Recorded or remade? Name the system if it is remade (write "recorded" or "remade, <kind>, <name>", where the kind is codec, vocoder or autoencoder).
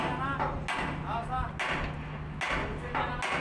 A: recorded